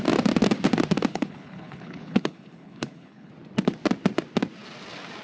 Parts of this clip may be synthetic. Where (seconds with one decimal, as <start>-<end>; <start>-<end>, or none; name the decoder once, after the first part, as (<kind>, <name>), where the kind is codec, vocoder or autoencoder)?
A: 1.1-3.3 (codec, HILCodec)